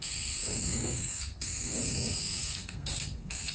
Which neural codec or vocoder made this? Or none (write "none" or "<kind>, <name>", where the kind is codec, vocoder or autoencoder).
codec, SNAC